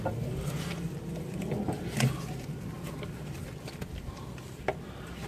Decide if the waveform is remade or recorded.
recorded